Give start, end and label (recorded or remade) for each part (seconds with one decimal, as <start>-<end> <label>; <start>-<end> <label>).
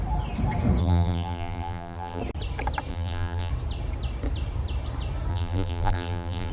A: 0.0-0.8 recorded; 0.8-2.2 remade; 2.2-2.9 recorded; 2.9-3.5 remade; 3.5-5.3 recorded; 5.3-6.5 remade